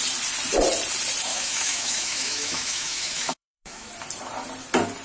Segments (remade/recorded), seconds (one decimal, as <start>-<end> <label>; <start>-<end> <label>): 0.0-1.3 recorded; 1.3-3.9 remade; 3.9-5.0 recorded